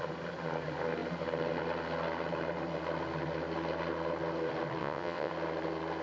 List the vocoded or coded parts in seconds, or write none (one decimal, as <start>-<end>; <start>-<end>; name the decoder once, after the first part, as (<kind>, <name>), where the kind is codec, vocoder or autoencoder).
4.8-5.3 (vocoder, WaveNeXt)